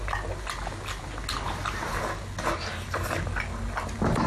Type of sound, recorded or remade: recorded